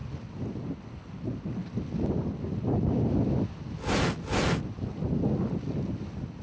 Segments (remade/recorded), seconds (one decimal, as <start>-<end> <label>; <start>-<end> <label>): 0.0-6.4 recorded

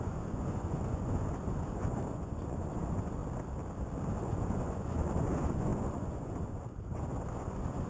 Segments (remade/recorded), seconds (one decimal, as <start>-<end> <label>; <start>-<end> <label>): 0.0-3.2 remade; 3.2-4.2 recorded; 4.2-7.9 remade